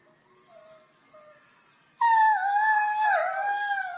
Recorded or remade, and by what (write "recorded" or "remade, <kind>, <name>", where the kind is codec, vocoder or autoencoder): recorded